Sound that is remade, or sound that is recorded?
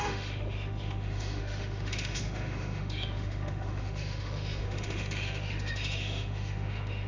remade